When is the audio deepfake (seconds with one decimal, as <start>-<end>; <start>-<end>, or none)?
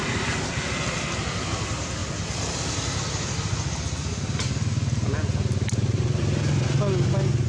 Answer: none